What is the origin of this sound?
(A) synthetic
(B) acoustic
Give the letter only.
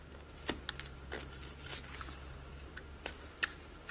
B